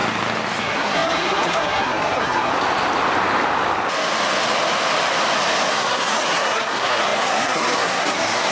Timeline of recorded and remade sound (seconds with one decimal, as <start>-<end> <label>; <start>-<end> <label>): 0.0-0.6 recorded; 0.6-2.5 remade; 2.5-5.7 recorded; 5.7-8.5 remade